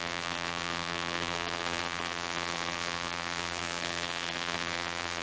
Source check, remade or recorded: remade